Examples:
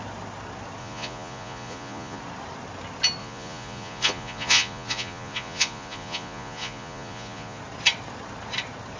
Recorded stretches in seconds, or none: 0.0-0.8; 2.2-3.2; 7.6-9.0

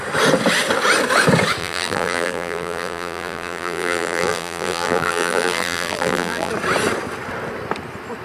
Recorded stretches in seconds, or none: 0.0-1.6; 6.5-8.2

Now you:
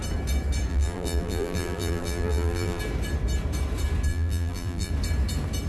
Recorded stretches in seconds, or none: 0.0-0.7; 2.8-4.1; 4.9-5.7